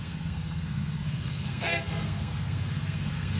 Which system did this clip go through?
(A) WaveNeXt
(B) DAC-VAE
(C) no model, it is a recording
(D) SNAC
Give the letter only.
D